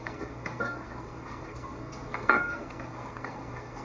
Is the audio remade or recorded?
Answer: remade